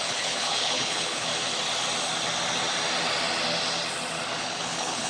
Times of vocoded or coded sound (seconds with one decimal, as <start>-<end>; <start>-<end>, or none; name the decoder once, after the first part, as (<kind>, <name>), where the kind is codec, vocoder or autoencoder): 0.0-1.3 (codec, HILCodec); 4.4-5.1

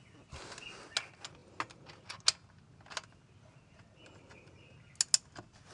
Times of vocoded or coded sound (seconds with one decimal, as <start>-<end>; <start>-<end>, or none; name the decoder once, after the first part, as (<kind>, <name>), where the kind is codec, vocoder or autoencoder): none